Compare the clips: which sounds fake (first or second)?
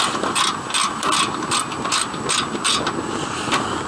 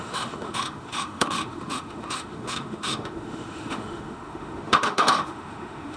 second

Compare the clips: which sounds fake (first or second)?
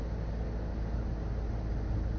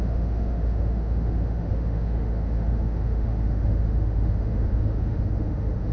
second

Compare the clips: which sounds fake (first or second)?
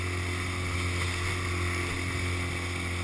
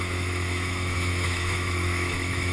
second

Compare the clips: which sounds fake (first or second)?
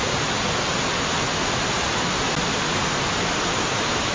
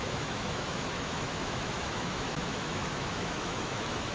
second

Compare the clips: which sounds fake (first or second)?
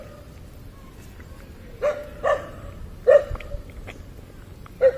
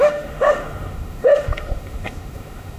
second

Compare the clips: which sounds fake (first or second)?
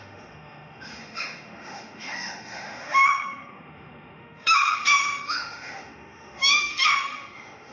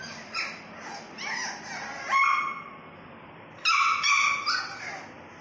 first